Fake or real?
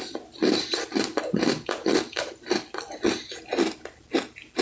real